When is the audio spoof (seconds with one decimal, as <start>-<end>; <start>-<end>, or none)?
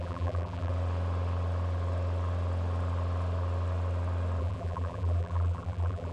0.0-0.7; 4.4-6.1